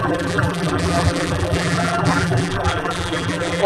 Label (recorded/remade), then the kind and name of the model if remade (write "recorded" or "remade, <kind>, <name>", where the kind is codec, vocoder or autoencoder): remade, vocoder, BigVGAN v2